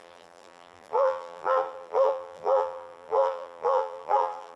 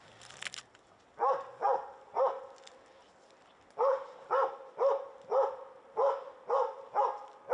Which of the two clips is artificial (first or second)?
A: first